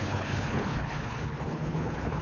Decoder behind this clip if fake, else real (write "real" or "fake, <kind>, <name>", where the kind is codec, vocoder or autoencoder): fake, codec, HILCodec